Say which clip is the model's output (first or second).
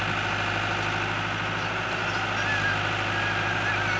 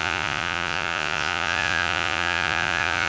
second